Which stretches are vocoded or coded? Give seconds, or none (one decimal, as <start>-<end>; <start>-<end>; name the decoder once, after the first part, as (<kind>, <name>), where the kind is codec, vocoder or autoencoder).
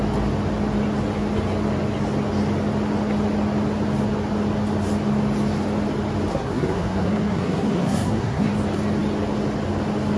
6.3-8.5 (codec, SNAC)